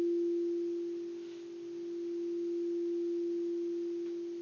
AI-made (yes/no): no